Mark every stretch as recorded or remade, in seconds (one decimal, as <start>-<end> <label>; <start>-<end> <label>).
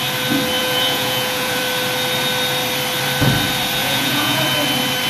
0.0-0.6 recorded; 0.6-1.6 remade; 1.6-3.8 recorded; 3.8-4.4 remade; 4.4-5.1 recorded